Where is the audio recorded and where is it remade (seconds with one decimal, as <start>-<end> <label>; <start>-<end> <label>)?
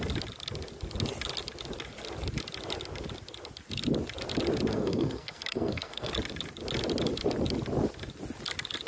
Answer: 0.0-4.7 recorded; 4.7-6.1 remade; 6.1-8.9 recorded